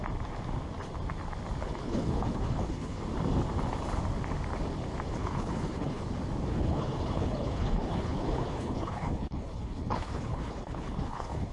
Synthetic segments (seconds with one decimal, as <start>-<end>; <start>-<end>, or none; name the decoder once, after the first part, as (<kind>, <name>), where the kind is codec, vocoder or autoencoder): 1.6-3.0 (codec, HILCodec); 5.2-6.0; 6.5-11.5